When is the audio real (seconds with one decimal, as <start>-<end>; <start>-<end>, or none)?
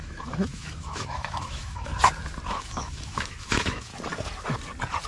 1.9-2.5; 3.9-5.1